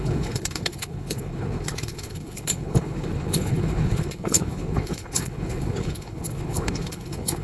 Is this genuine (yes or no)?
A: no